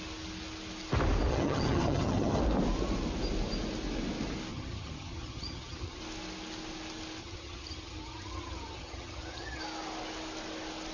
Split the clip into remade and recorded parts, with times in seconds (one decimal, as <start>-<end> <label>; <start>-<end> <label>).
0.0-1.3 recorded; 1.3-2.4 remade; 2.4-4.5 recorded; 4.5-6.0 remade; 6.0-7.2 recorded; 7.2-9.6 remade; 9.6-10.9 recorded